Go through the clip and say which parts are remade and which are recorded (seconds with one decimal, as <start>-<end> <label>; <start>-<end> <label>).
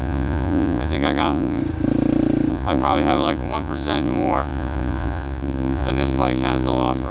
0.0-1.6 remade; 1.6-2.5 recorded; 2.5-7.1 remade